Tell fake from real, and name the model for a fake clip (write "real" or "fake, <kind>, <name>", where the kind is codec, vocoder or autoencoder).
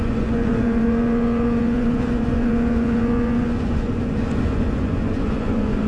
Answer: fake, vocoder, Vocos